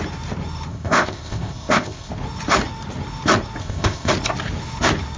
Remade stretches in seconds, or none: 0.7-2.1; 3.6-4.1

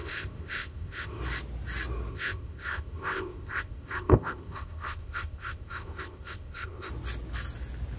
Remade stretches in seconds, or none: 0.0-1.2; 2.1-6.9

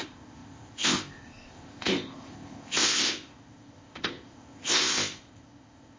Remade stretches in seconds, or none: 0.0-6.0

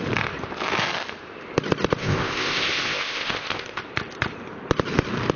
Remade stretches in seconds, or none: 2.0-3.8

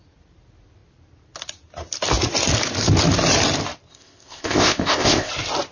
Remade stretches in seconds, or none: 3.9-5.3

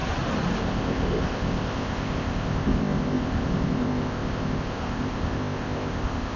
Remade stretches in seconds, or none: 0.6-6.4

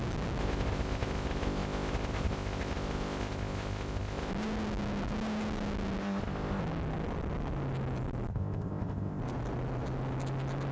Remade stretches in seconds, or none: 0.4-4.3; 6.0-6.6; 8.3-9.2